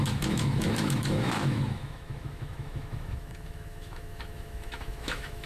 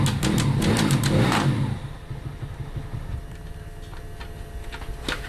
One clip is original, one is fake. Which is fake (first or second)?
first